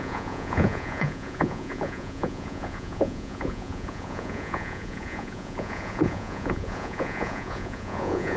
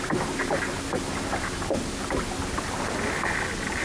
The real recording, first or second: second